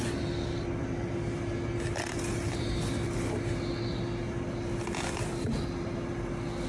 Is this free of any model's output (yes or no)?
yes